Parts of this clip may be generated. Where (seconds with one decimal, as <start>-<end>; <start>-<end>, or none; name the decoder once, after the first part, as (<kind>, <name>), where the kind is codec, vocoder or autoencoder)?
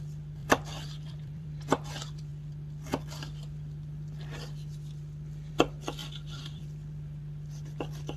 0.4-1.5 (vocoder, BigVGAN v2); 6.0-6.6